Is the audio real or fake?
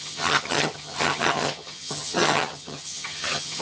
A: fake